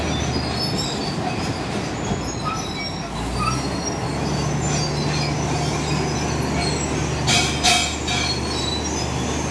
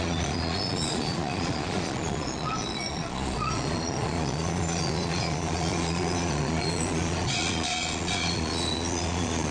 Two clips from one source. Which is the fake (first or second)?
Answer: second